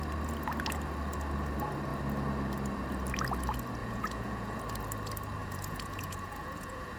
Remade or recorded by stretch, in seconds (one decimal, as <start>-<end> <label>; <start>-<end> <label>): 0.0-3.8 recorded; 3.8-4.6 remade; 4.6-5.4 recorded; 5.4-7.0 remade